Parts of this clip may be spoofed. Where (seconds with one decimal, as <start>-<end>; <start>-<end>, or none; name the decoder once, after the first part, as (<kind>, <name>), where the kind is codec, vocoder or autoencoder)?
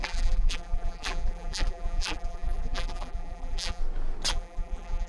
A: 0.0-3.8 (vocoder, BigVGAN v2); 4.3-5.1